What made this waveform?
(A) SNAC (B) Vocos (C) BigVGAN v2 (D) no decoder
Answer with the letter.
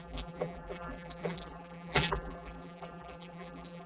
C